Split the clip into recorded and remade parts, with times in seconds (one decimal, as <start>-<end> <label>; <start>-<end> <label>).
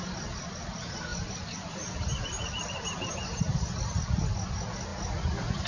0.0-1.1 recorded; 1.1-3.4 remade; 3.4-5.7 recorded